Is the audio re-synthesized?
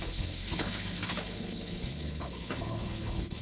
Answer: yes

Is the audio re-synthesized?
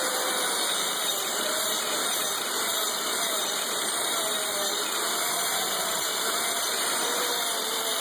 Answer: yes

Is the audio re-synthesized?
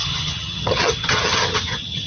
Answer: yes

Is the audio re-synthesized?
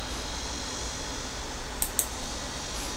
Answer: no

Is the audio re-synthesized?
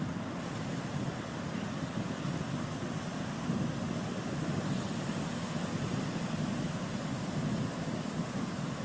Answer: no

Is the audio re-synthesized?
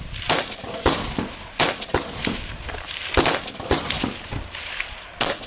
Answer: no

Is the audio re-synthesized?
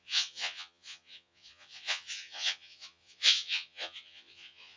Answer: yes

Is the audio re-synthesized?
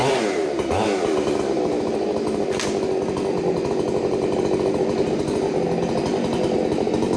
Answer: no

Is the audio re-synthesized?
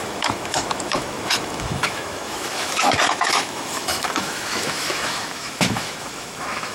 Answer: yes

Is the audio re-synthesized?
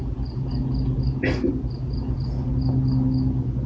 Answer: no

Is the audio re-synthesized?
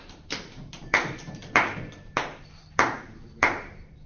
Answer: yes